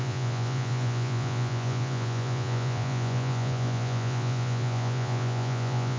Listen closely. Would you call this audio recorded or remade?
remade